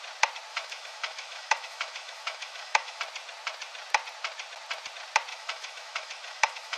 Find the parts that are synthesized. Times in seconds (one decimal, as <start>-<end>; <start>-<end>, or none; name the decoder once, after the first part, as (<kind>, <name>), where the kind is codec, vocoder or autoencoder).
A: 0.5-3.0 (autoencoder, DAC-VAE); 5.3-6.8

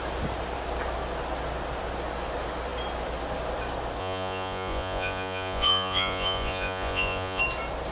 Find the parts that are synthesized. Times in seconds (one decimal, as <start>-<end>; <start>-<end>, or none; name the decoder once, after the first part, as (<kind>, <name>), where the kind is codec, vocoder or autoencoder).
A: 4.0-7.4 (vocoder, Vocos)

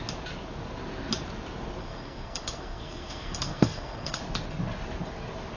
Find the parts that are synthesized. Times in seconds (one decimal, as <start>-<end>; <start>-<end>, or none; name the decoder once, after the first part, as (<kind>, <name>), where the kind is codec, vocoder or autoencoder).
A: 1.8-4.2 (codec, SNAC)

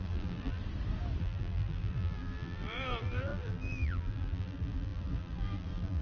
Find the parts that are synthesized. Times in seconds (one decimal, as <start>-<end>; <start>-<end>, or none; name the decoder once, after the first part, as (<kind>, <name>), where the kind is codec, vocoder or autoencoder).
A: 0.0-0.6 (vocoder, BigVGAN v2); 1.2-6.0

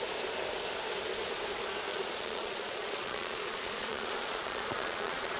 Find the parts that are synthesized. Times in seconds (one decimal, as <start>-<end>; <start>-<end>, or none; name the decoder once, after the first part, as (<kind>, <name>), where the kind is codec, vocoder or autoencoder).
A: 1.9-5.4 (vocoder, Vocos)

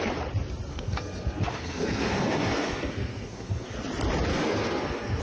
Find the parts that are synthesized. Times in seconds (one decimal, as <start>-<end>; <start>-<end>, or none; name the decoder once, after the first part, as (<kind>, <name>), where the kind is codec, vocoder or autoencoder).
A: 0.7-3.8 (codec, SNAC); 4.3-5.2

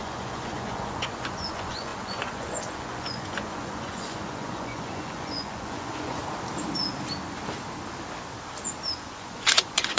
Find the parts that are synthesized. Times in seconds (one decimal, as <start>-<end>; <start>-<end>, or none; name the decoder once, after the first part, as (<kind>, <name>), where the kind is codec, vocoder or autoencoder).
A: 0.0-6.2 (vocoder, Vocos); 8.9-10.0